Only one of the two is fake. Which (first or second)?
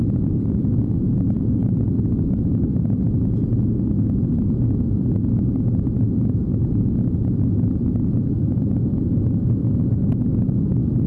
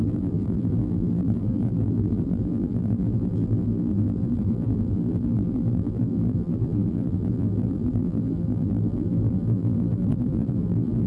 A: second